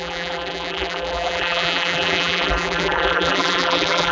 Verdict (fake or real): fake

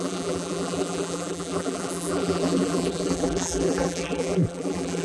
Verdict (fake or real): fake